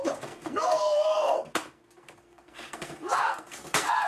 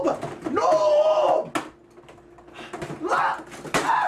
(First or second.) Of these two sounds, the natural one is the second